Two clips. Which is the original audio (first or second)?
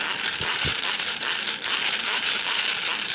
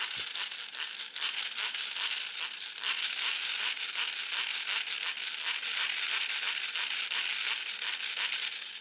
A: second